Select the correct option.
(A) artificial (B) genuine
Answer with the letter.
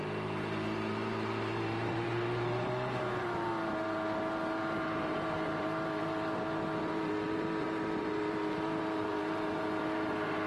A